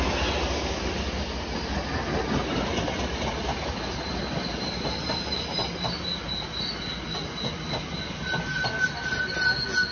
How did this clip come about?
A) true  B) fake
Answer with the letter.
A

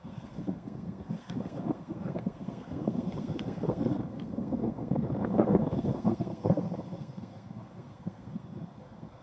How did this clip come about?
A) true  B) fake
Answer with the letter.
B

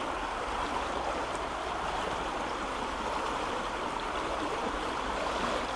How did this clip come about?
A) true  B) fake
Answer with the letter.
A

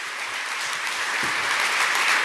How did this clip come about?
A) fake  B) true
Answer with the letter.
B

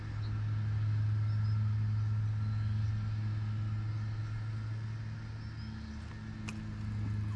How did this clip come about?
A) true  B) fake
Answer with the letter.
A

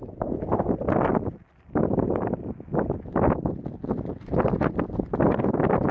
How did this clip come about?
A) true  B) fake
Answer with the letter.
A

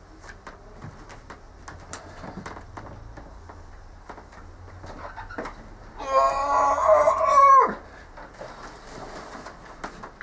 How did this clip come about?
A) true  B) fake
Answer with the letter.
A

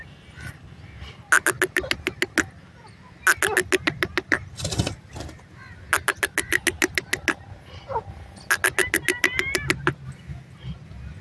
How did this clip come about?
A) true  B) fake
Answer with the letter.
A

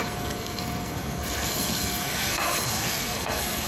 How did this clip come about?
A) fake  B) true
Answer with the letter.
A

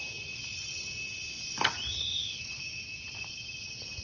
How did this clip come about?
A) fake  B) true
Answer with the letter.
B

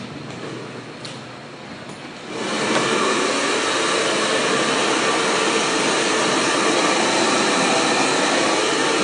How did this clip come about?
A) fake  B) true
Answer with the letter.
B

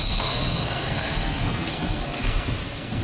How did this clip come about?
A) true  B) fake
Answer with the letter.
B